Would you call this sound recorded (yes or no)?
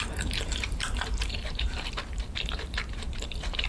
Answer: no